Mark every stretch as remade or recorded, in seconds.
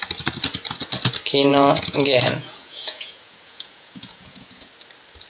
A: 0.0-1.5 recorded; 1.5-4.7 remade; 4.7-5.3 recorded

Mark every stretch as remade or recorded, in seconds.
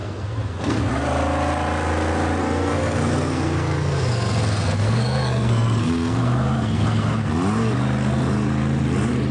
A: 0.0-0.9 remade; 0.9-2.4 recorded; 2.4-7.3 remade; 7.3-9.3 recorded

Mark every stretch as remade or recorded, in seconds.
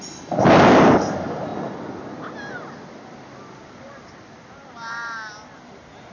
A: 0.0-6.1 recorded